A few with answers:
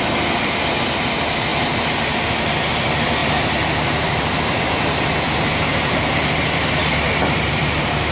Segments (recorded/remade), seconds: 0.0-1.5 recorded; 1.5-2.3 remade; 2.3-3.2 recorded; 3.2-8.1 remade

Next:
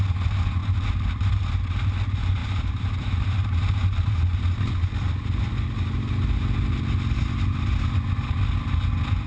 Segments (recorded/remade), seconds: 0.0-2.4 recorded; 2.4-4.2 remade; 4.2-9.3 recorded

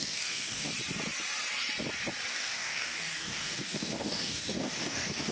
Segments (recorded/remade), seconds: 0.0-0.7 remade; 0.7-2.3 recorded; 2.3-5.3 remade

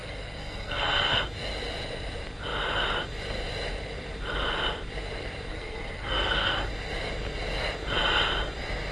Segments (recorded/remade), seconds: 0.0-1.2 remade; 1.2-5.5 recorded; 5.5-6.7 remade; 6.7-8.9 recorded

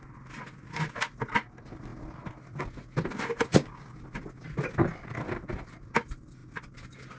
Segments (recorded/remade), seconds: 0.0-3.5 recorded; 3.5-4.0 remade; 4.0-7.2 recorded

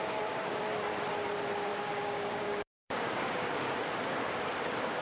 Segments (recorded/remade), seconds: 0.0-1.7 recorded; 1.7-3.7 remade; 3.7-5.0 recorded

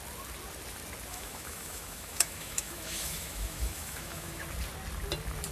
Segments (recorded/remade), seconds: 0.0-1.1 recorded; 1.1-4.4 remade; 4.4-5.5 recorded

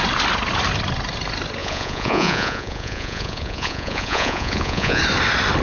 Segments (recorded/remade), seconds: 0.0-1.6 recorded; 1.6-5.0 remade; 5.0-5.6 recorded